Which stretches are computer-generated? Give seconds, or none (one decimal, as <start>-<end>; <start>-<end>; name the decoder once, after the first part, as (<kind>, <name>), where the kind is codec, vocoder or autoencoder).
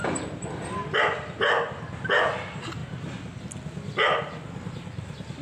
none